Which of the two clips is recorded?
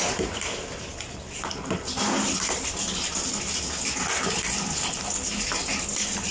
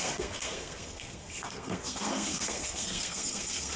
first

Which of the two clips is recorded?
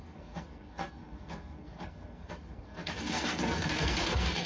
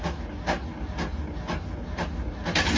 second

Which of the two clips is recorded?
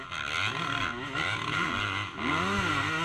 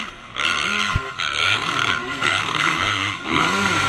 first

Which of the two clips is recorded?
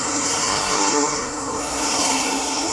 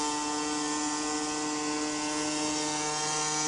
second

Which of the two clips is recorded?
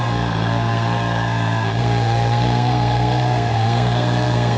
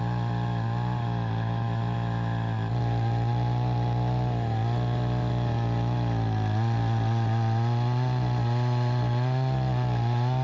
second